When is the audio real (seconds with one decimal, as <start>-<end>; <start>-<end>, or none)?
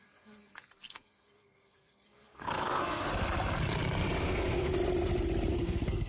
3.1-4.2; 4.7-5.5